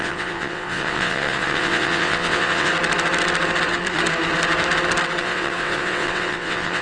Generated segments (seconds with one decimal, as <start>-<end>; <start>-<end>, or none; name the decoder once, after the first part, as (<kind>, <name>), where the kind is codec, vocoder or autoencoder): 0.0-2.7 (vocoder, WaveNeXt); 5.2-6.8